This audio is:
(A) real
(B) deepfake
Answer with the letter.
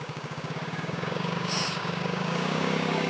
B